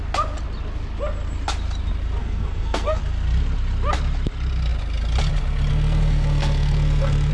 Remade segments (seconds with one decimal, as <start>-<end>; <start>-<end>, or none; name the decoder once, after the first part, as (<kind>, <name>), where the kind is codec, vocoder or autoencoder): 2.2-3.0 (codec, SNAC); 5.7-7.3